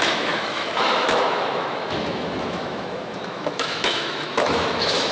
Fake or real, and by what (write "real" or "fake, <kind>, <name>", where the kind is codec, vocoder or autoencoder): fake, autoencoder, DAC-VAE